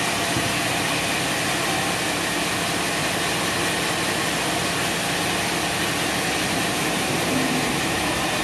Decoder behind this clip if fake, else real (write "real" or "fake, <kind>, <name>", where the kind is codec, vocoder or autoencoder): real